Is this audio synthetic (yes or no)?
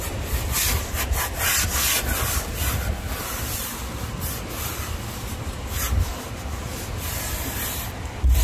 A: no